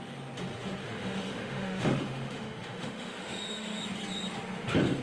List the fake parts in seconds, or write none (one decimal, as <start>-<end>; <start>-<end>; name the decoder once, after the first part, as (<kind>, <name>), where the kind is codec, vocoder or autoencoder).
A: 0.8-3.8 (autoencoder, DAC-VAE)